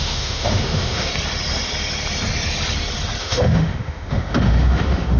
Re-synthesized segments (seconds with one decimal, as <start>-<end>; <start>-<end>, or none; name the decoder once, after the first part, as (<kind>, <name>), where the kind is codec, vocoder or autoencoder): 0.0-1.1 (autoencoder, DAC-VAE); 3.2-5.2